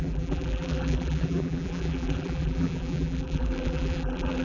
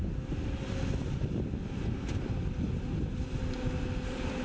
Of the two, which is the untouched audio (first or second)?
second